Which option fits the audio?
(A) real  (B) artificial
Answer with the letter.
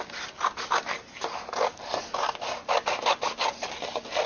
A